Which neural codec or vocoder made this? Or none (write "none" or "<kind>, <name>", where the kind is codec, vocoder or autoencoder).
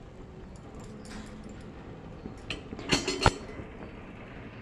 none